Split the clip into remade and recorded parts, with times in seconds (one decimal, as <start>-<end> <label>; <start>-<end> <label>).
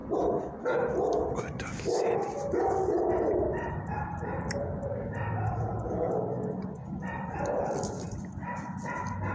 0.0-9.3 remade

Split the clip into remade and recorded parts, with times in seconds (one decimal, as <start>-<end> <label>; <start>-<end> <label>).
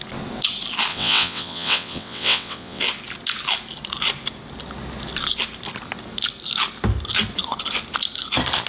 0.0-0.9 recorded; 0.9-2.8 remade; 2.8-8.7 recorded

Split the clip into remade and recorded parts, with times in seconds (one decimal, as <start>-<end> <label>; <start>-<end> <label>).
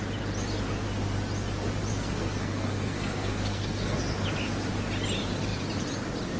0.0-1.9 recorded; 1.9-4.0 remade; 4.0-6.4 recorded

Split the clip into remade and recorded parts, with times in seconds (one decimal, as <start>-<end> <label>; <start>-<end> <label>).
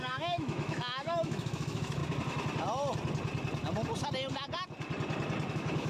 0.0-2.0 remade; 2.0-5.5 recorded; 5.5-5.9 remade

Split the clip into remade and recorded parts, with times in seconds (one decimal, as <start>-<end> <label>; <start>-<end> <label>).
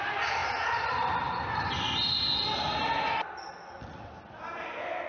0.0-5.1 recorded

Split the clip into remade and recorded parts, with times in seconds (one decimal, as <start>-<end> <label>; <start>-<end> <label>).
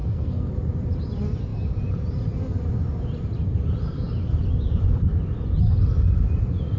0.0-0.5 remade; 0.5-6.8 recorded